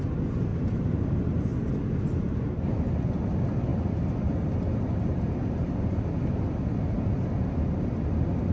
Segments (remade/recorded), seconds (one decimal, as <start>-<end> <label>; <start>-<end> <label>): 0.0-0.5 recorded; 0.5-1.0 remade; 1.0-8.5 recorded